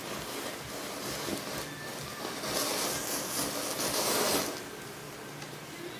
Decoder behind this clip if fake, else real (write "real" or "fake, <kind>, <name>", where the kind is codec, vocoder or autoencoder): real